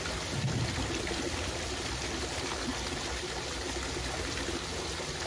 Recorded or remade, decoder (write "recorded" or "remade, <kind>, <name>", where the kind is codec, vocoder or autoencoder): recorded